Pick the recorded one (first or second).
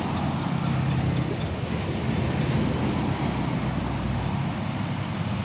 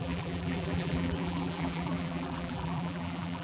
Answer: first